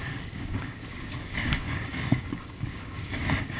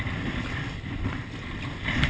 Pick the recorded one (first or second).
second